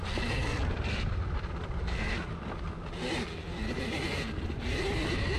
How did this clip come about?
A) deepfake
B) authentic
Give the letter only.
B